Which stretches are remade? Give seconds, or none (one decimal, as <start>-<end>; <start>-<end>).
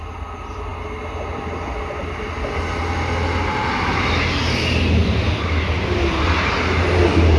none